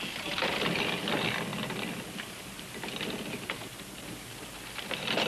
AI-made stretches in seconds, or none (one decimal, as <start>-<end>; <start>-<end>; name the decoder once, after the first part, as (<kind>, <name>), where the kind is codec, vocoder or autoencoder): none